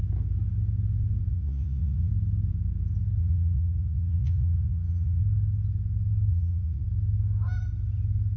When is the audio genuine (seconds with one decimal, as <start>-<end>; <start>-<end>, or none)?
0.0-1.3; 2.1-3.2; 5.2-6.3; 6.8-8.4